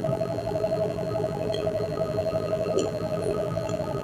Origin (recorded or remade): remade